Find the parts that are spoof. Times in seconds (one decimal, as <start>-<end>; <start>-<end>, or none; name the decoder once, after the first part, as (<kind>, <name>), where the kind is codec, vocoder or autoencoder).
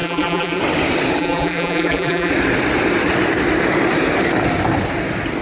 0.0-0.6 (vocoder, BigVGAN v2); 1.2-2.3